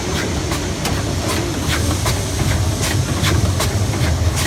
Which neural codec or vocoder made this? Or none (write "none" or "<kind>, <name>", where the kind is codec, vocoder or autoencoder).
none